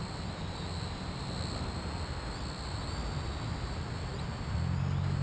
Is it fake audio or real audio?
real